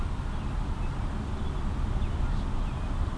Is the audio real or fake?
real